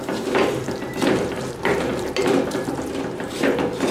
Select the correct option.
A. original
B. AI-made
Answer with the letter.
B